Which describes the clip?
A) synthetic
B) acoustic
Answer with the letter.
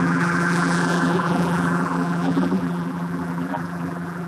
A